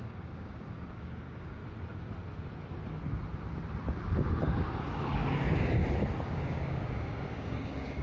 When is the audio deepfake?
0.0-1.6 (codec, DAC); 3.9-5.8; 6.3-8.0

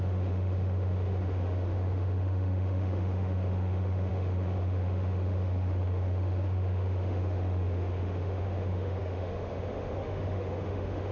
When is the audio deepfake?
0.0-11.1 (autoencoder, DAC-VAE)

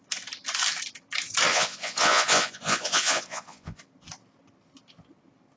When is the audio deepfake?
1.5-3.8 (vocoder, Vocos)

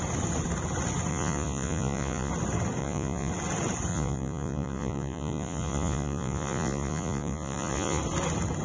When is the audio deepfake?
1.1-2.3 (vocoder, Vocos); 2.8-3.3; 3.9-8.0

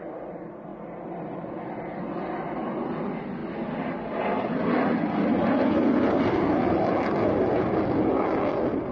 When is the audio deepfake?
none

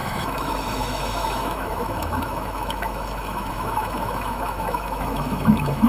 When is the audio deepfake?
0.0-5.9 (autoencoder, DAC-VAE)